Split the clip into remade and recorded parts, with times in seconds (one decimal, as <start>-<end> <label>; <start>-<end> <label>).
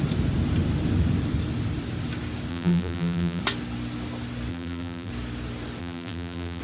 0.0-2.5 recorded; 2.5-3.4 remade; 3.4-4.5 recorded; 4.5-5.1 remade; 5.1-5.8 recorded; 5.8-6.6 remade